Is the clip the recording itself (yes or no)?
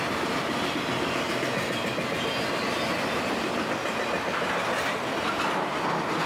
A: yes